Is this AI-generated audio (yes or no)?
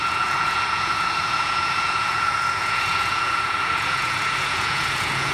yes